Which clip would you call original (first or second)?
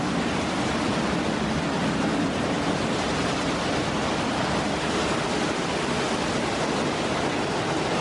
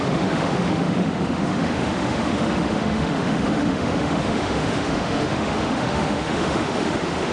first